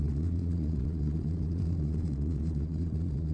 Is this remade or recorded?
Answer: remade